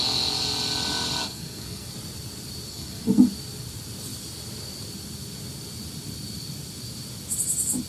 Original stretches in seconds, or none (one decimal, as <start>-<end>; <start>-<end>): 0.0-1.2; 1.9-2.7; 3.3-7.9